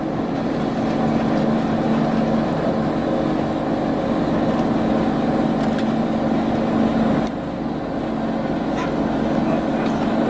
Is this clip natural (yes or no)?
yes